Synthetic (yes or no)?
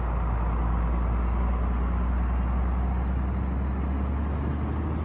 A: no